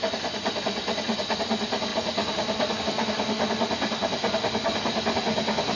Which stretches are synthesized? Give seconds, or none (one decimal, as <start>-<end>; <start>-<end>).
none